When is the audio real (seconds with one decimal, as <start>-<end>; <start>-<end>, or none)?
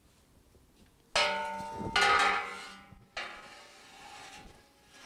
0.0-5.1